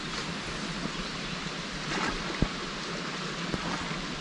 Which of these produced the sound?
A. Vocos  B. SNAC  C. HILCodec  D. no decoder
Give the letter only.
D